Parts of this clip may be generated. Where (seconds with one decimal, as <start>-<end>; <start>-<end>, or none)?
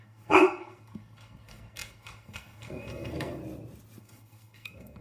0.0-3.4; 4.0-5.0